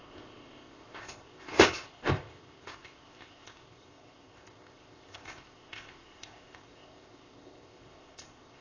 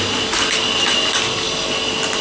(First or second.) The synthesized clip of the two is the first